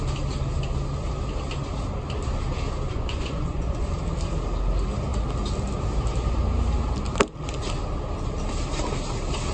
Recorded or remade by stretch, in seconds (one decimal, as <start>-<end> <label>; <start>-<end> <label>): 0.0-2.9 recorded; 2.9-3.9 remade; 3.9-9.5 recorded

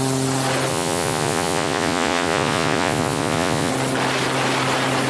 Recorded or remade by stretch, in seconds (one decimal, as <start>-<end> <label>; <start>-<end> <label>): 0.0-0.7 recorded; 0.7-3.7 remade; 3.7-5.1 recorded